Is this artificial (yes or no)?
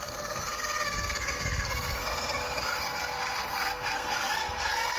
yes